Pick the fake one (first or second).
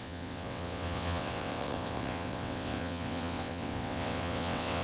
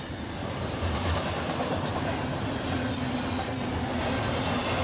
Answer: first